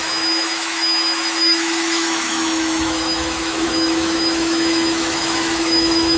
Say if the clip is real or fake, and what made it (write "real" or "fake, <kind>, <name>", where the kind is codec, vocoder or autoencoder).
fake, autoencoder, DAC-VAE